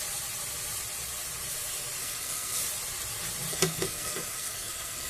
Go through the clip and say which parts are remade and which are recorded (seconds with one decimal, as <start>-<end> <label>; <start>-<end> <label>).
0.0-2.0 recorded; 2.0-2.6 remade; 2.6-3.5 recorded; 3.5-5.1 remade